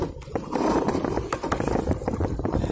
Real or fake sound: real